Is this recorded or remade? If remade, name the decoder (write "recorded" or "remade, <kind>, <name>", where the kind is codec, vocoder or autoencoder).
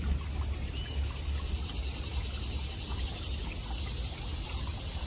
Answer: recorded